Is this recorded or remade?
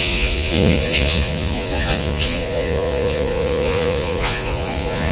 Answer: remade